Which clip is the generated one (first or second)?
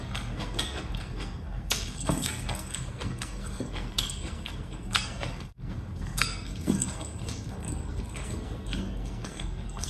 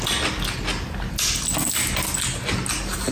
first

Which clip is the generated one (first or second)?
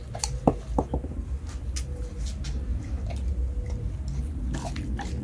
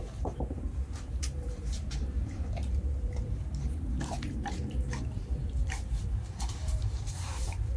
second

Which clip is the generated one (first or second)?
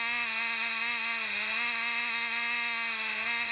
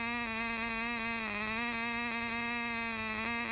first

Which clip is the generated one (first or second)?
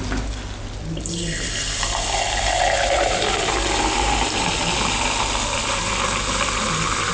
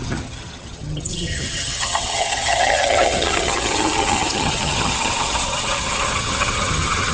second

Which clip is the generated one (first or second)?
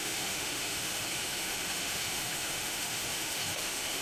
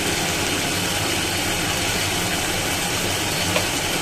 first